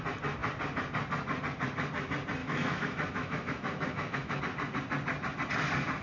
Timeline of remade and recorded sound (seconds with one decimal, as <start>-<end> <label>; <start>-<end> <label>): 0.0-2.4 recorded; 2.4-4.4 remade; 4.4-6.0 recorded